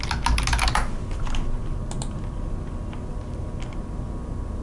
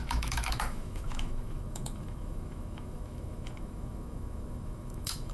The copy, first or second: second